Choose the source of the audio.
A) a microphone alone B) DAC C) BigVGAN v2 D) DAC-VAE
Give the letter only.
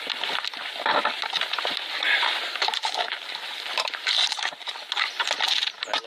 A